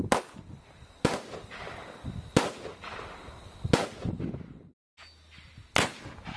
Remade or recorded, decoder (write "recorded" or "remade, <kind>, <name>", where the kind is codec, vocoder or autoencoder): recorded